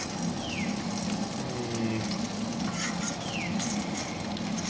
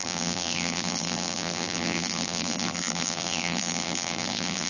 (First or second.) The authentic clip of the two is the first